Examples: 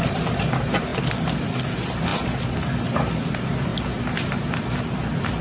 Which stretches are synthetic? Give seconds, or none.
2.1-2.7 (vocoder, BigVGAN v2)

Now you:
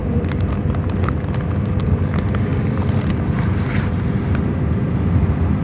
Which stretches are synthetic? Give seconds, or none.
none

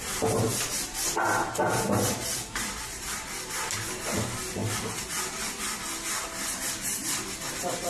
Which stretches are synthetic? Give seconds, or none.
none

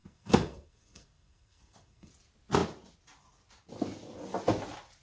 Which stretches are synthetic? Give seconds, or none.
0.0-2.1 (codec, SNAC)

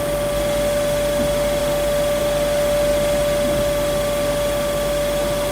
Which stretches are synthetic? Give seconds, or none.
none

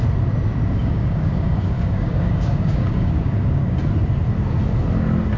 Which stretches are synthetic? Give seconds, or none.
0.8-3.8 (codec, DAC)

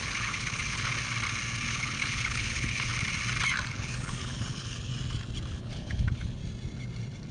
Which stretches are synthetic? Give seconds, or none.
0.0-0.9 (codec, HILCodec); 1.7-2.9; 3.7-4.9; 5.5-6.4